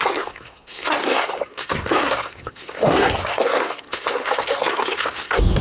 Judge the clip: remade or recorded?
remade